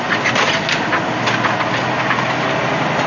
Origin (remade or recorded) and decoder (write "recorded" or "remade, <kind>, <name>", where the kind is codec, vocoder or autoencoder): recorded